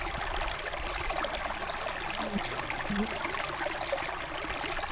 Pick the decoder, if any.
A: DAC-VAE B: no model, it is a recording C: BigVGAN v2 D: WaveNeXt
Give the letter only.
B